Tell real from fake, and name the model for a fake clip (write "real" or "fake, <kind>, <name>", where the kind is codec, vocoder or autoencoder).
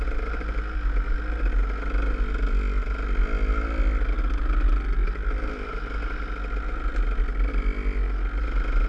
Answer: real